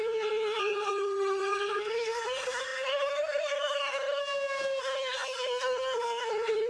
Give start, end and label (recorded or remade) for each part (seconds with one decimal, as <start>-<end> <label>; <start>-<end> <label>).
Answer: 0.0-4.2 remade; 4.2-4.8 recorded; 4.8-6.7 remade